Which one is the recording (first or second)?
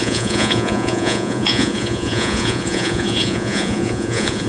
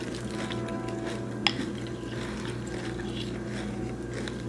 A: second